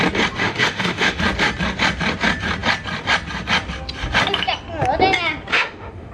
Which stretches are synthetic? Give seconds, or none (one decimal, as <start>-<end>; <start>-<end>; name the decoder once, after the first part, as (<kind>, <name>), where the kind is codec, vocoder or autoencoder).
0.4-1.2 (autoencoder, DAC-VAE); 5.5-6.1